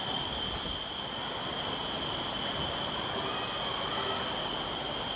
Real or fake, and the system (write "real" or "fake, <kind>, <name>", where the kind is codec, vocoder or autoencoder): real